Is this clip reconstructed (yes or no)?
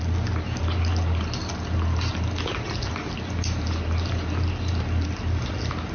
no